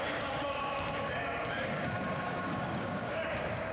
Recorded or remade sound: remade